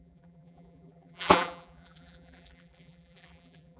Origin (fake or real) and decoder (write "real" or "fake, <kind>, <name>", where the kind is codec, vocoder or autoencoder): fake, vocoder, BigVGAN v2